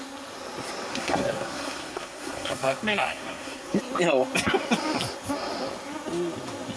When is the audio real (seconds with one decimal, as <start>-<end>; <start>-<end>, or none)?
0.0-0.9; 3.8-6.8